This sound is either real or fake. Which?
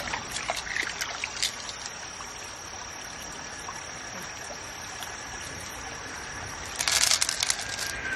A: real